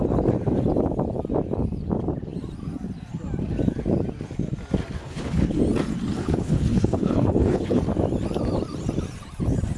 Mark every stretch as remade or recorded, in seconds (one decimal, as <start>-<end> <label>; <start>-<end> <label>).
0.0-5.0 recorded; 5.0-5.6 remade; 5.6-6.2 recorded; 6.2-7.8 remade; 7.8-9.8 recorded